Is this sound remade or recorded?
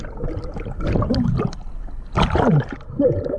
recorded